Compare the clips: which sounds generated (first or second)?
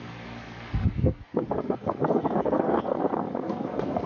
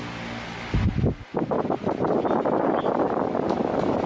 first